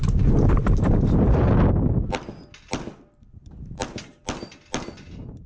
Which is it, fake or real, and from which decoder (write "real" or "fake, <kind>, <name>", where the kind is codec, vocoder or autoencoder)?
real